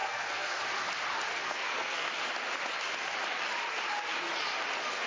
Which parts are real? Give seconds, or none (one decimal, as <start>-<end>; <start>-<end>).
0.6-1.3; 2.1-5.1

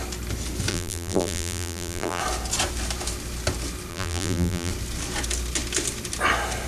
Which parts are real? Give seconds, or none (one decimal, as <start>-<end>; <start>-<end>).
0.0-0.7; 2.2-3.9; 4.7-6.7

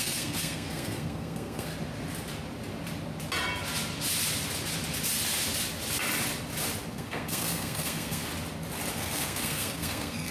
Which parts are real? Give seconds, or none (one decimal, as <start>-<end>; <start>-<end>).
1.7-6.9; 8.3-8.9

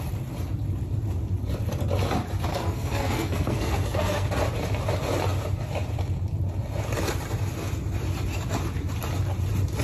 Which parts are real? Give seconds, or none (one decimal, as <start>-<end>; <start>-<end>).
0.0-2.5; 4.3-9.8

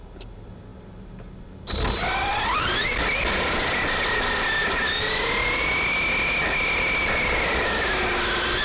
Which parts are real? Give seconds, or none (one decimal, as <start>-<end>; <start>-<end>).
0.0-8.6

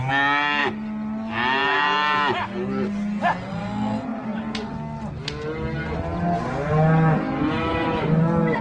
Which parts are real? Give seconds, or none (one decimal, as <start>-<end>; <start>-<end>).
0.0-8.6

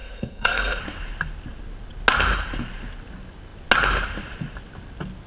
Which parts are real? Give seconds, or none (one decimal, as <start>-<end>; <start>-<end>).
0.8-5.3